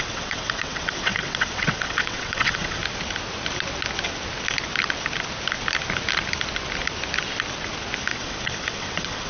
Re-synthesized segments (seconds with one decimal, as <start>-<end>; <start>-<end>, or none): 0.0-2.8; 8.0-9.3